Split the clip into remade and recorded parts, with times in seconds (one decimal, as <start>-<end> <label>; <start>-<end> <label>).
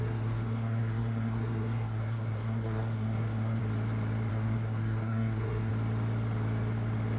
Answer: 0.0-3.6 remade; 3.6-4.3 recorded; 4.3-5.7 remade; 5.7-7.2 recorded